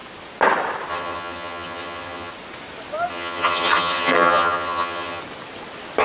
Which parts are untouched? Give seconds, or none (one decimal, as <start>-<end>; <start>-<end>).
0.0-0.9; 2.3-3.1; 5.2-6.0